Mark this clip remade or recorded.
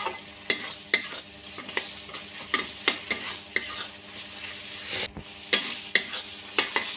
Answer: recorded